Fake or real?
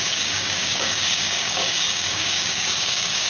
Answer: fake